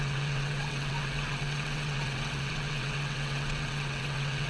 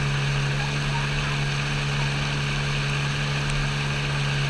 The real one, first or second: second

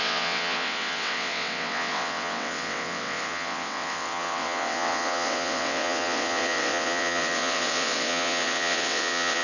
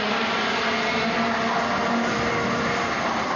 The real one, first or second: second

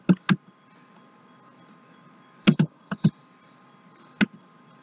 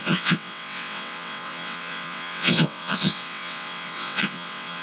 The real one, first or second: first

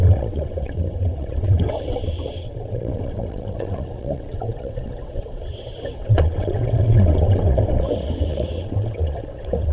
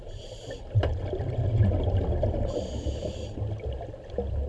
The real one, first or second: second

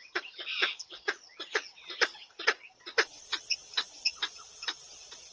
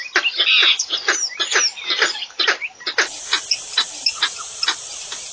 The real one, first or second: second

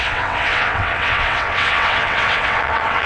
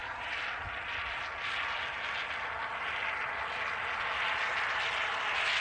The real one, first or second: second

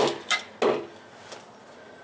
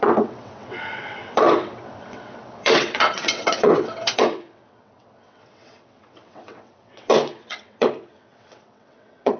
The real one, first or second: first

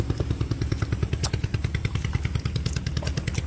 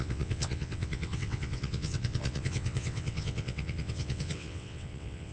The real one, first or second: first